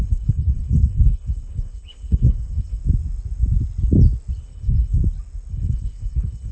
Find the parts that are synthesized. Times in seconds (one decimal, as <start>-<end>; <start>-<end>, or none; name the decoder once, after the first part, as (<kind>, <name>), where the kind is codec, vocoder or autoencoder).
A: 0.0-2.8 (codec, HILCodec); 4.4-5.0; 5.5-6.5